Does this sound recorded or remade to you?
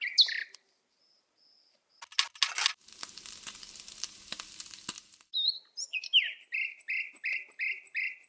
recorded